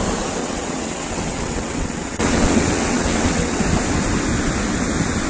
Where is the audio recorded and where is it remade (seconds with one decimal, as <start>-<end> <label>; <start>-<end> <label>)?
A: 0.0-0.4 recorded; 0.4-3.6 remade; 3.6-5.3 recorded